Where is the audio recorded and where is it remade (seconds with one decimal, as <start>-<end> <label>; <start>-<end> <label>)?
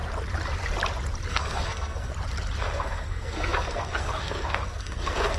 0.0-1.3 recorded; 1.3-2.1 remade; 2.1-2.6 recorded; 2.6-5.4 remade